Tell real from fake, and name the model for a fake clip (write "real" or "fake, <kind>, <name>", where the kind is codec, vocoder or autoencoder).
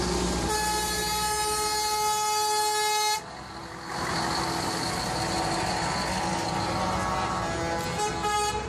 real